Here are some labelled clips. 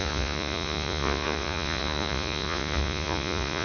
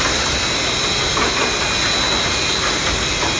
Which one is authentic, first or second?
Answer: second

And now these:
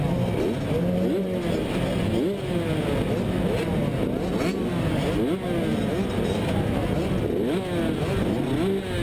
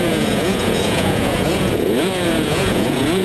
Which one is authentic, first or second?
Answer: first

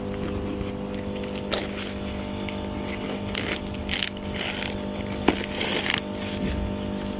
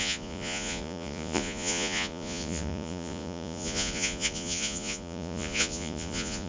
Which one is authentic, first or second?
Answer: first